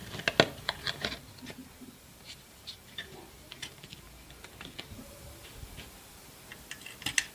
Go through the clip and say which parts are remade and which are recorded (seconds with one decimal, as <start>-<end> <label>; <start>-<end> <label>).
0.0-0.6 recorded; 0.6-6.5 remade; 6.5-7.3 recorded